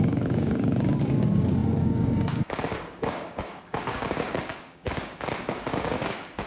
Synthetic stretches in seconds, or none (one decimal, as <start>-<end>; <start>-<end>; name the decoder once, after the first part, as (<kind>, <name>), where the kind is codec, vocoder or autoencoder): 0.0-6.5 (codec, DAC)